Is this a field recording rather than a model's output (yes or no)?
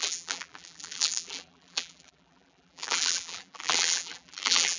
no